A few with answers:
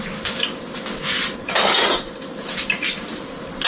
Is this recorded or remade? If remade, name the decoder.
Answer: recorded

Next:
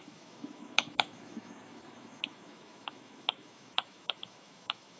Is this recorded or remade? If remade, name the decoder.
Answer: remade, autoencoder, DAC-VAE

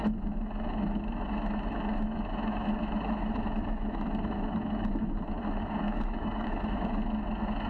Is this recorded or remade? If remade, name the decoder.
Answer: remade, autoencoder, DAC-VAE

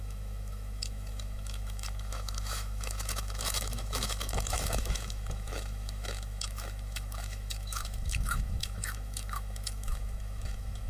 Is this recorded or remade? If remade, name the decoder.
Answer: remade, autoencoder, DAC-VAE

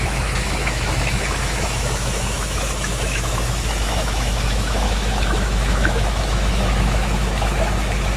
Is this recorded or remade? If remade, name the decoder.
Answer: remade, autoencoder, DAC-VAE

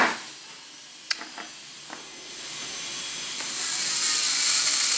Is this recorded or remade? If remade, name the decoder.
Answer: recorded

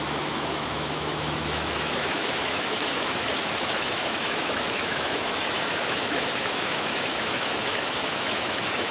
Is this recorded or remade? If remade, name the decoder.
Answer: remade, autoencoder, DAC-VAE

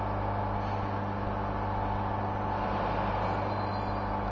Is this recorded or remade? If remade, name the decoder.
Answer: recorded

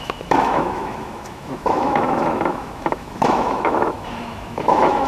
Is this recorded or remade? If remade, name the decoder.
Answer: remade, autoencoder, DAC-VAE